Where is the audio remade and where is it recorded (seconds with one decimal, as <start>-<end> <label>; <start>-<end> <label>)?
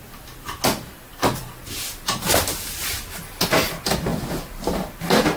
0.0-1.1 recorded; 1.1-3.0 remade; 3.0-4.1 recorded; 4.1-5.0 remade; 5.0-5.4 recorded